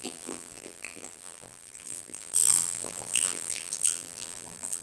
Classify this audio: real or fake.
fake